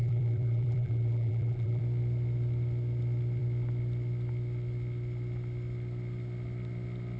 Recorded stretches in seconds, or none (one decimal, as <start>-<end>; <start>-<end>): 1.8-7.2